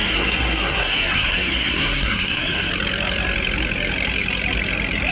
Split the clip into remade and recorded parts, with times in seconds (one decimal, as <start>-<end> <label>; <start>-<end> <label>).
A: 0.0-2.7 remade; 2.7-5.1 recorded